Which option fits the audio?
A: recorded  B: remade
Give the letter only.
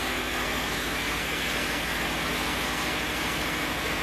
B